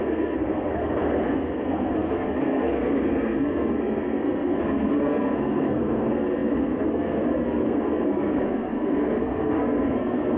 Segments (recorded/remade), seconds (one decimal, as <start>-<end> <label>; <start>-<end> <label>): 0.0-10.4 remade